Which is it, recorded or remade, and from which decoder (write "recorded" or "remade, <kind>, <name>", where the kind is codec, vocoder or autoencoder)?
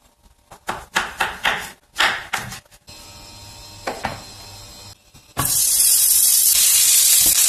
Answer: recorded